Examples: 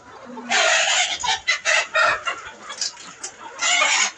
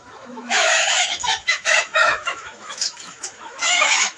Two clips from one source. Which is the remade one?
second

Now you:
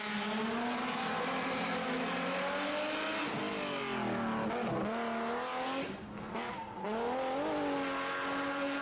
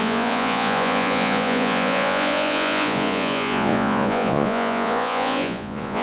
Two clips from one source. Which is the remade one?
second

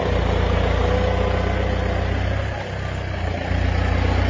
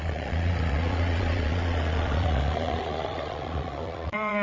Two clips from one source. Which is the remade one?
second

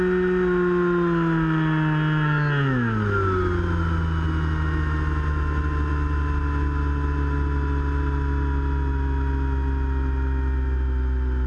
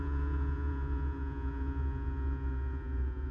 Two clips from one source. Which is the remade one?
second